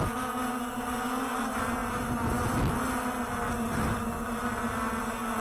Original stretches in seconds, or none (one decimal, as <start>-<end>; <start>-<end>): 0.0-5.4